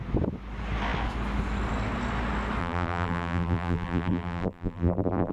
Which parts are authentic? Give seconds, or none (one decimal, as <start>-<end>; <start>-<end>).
0.0-2.6